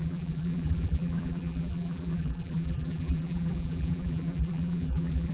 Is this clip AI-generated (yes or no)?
yes